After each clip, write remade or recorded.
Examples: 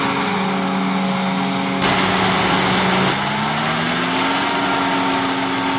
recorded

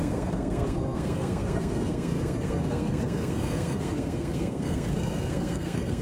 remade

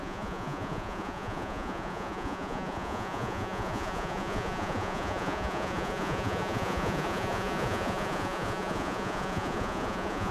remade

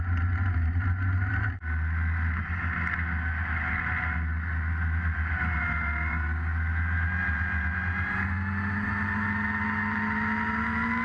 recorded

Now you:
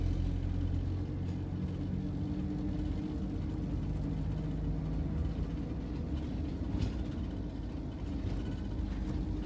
recorded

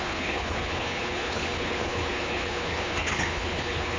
remade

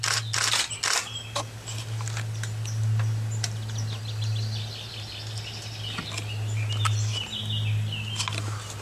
recorded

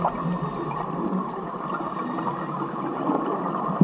recorded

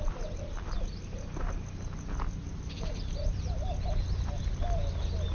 recorded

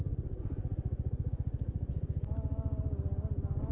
recorded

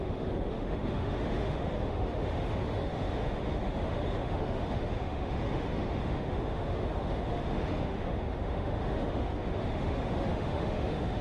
remade